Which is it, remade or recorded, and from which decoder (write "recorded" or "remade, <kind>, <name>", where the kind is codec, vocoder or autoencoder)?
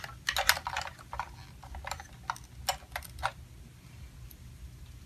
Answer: recorded